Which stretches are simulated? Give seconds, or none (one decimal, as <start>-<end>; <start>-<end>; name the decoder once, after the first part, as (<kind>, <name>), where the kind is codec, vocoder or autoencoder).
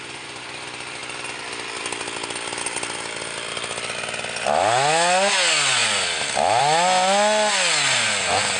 none